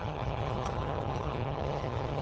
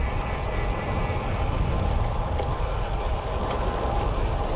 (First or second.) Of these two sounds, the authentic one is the second